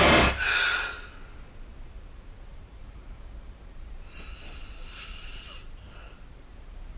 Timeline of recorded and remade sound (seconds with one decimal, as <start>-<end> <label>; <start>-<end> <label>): 0.0-2.5 recorded; 2.5-7.0 remade